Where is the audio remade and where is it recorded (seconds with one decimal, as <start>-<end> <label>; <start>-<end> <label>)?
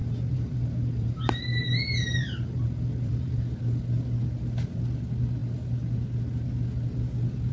0.0-3.4 remade; 3.4-7.5 recorded